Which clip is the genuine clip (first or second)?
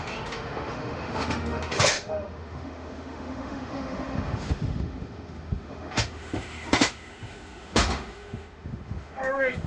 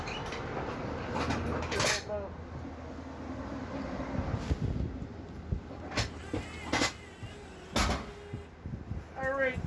second